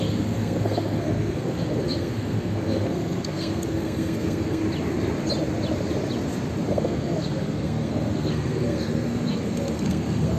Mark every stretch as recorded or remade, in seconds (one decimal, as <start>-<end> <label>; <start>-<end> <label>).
0.0-4.6 remade; 4.6-6.7 recorded; 6.7-10.4 remade

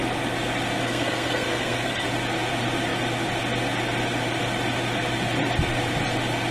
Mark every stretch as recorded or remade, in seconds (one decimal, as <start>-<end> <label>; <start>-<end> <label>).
0.0-0.8 recorded; 0.8-2.1 remade; 2.1-6.5 recorded

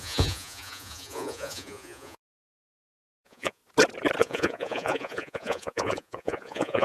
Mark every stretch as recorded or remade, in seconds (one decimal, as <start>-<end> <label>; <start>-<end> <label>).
0.0-3.6 remade; 3.6-4.2 recorded; 4.2-6.8 remade

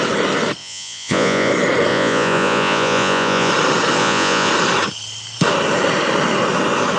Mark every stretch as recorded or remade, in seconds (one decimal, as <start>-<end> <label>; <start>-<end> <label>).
0.0-0.6 recorded; 0.6-1.5 remade; 1.5-1.9 recorded; 1.9-3.5 remade; 3.5-4.0 recorded; 4.0-4.5 remade; 4.5-7.0 recorded